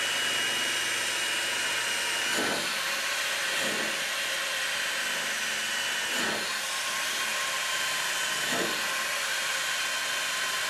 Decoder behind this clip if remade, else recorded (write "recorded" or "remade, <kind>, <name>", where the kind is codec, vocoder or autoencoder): recorded